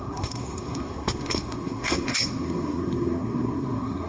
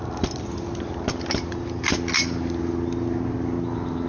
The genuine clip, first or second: second